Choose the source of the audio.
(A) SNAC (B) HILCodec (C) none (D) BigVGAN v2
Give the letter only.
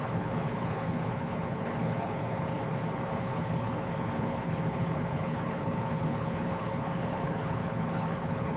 B